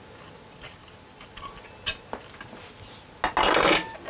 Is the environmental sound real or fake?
real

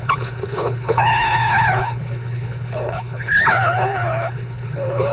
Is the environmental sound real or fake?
fake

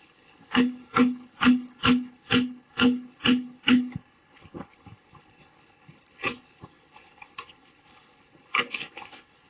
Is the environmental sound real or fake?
fake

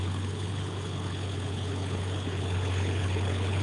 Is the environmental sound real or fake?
fake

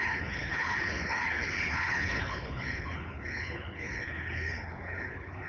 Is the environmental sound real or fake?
fake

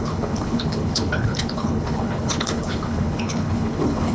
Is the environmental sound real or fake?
fake